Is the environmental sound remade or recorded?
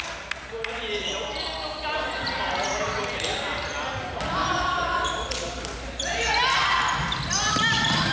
recorded